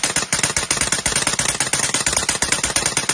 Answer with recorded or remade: recorded